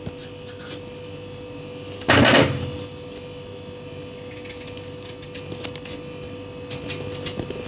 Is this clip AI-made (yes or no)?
no